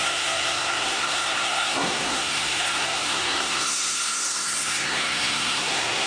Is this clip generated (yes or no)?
yes